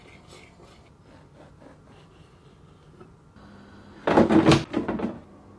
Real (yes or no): yes